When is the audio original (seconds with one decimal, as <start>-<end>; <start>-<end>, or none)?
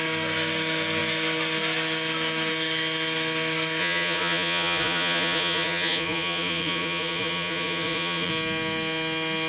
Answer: 0.0-3.8; 8.3-9.5